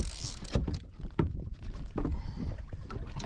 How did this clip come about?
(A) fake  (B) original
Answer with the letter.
B